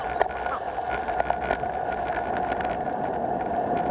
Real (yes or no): yes